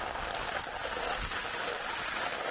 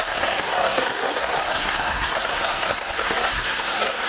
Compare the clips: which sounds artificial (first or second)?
second